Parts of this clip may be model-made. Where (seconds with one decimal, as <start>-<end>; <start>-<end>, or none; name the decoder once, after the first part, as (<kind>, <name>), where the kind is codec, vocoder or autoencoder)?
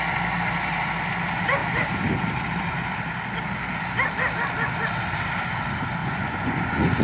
6.0-7.0 (vocoder, Vocos)